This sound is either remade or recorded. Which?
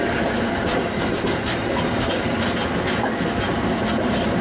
recorded